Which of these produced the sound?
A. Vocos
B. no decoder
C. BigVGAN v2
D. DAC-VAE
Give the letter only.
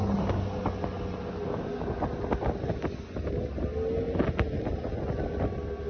B